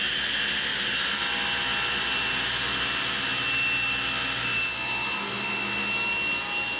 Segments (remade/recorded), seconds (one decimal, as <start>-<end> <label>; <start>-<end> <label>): 0.0-6.8 recorded

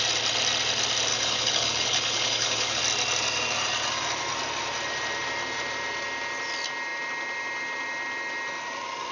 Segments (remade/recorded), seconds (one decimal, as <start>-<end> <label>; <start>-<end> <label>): 0.0-1.1 recorded; 1.1-2.8 remade; 2.8-9.1 recorded

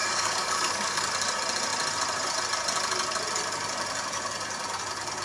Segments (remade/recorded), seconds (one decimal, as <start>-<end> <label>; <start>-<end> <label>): 0.0-1.1 remade; 1.1-5.2 recorded

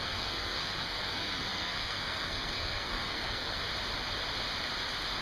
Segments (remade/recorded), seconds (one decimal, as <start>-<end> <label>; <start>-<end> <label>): 0.0-3.6 remade; 3.6-5.2 recorded

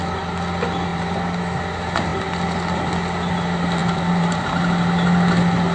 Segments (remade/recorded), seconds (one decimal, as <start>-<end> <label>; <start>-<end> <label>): 0.0-0.9 recorded; 0.9-1.4 remade; 1.4-3.8 recorded; 3.8-4.4 remade; 4.4-5.7 recorded

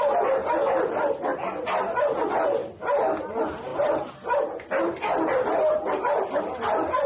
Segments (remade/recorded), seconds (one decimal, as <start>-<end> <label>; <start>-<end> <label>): 0.0-7.1 recorded

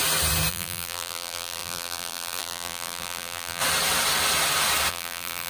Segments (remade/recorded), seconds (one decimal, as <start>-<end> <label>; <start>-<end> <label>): 0.0-0.5 recorded; 0.5-3.6 remade; 3.6-4.9 recorded; 4.9-5.5 remade

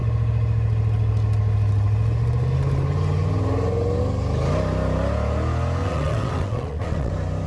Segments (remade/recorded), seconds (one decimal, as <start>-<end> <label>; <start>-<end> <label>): 0.0-5.8 recorded; 5.8-7.1 remade; 7.1-7.5 recorded